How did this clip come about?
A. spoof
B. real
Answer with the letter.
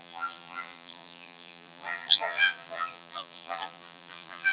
A